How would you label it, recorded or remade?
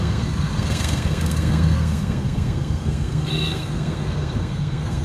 remade